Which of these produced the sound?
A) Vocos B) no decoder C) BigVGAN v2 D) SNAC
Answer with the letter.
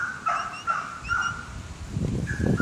C